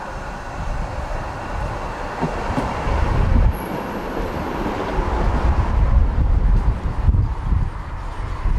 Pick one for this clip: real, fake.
real